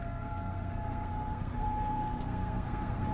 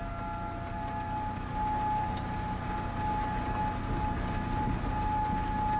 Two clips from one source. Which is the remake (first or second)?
first